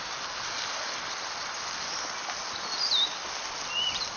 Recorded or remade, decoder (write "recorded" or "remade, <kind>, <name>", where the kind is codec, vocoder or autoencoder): recorded